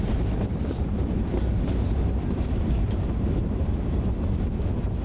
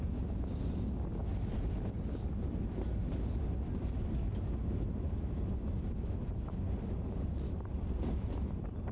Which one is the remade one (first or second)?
first